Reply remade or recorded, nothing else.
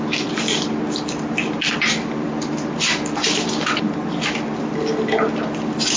recorded